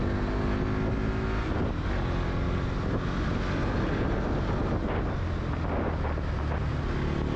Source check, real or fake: real